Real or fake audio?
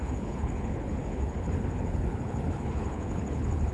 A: fake